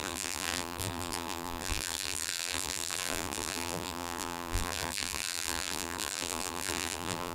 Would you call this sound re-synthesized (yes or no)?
yes